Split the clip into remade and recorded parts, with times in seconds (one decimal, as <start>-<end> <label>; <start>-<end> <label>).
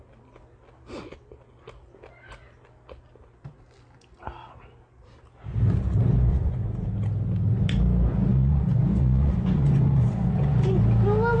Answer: 0.0-6.3 recorded; 6.3-6.9 remade; 6.9-8.3 recorded; 8.3-10.8 remade; 10.8-11.4 recorded